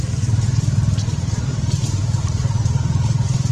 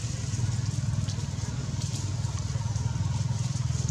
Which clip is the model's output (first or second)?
first